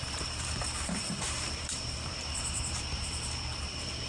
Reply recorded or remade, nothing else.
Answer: remade